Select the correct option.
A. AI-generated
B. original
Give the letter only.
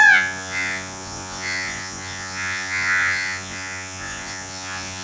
A